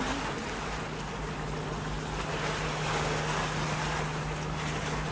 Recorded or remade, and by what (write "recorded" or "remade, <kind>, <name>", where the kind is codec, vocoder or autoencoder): recorded